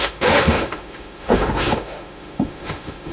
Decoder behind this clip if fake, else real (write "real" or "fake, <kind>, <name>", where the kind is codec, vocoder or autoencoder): fake, autoencoder, DAC-VAE